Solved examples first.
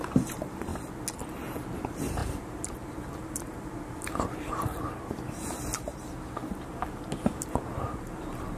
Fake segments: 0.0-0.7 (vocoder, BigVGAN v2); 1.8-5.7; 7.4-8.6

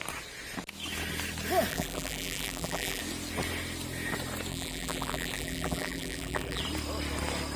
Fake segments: 1.7-3.0 (vocoder, BigVGAN v2); 4.5-6.6

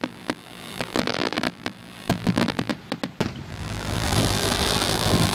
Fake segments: 0.0-2.7 (vocoder, BigVGAN v2); 3.5-5.3

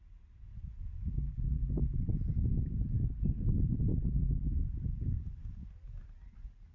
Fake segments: 1.1-2.0 (vocoder, BigVGAN v2); 3.9-4.5

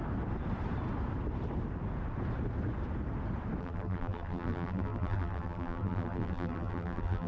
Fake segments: 3.6-7.3 (vocoder, BigVGAN v2)

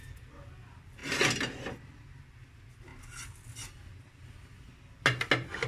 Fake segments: none

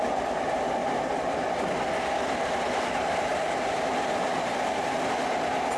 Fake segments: 0.8-2.8 (vocoder, BigVGAN v2)

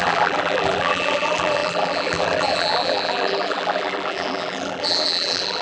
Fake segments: 0.0-5.6 (vocoder, BigVGAN v2)